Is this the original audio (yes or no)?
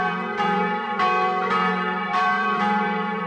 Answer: no